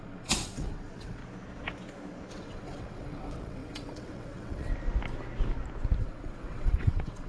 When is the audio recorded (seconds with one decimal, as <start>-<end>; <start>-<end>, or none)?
1.2-2.3; 4.7-6.0